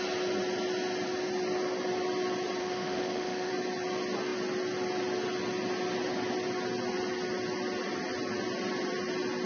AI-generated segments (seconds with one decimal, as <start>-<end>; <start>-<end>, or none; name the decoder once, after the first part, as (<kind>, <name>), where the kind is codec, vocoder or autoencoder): 2.6-3.5 (autoencoder, DAC-VAE)